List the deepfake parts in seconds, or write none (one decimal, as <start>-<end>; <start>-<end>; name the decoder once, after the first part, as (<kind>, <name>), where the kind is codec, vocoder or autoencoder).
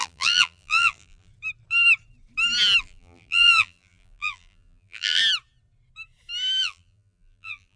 0.0-1.3 (vocoder, BigVGAN v2); 2.8-5.2; 6.6-7.8